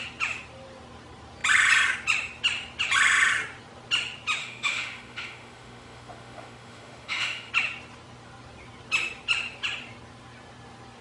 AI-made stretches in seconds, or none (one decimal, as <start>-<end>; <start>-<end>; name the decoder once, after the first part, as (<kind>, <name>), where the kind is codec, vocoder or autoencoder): 4.4-7.5 (autoencoder, DAC-VAE)